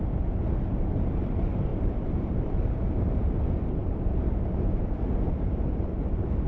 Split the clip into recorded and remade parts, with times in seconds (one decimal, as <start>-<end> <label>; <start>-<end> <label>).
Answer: 0.0-1.7 recorded; 1.7-3.3 remade; 3.3-3.8 recorded; 3.8-4.8 remade; 4.8-6.5 recorded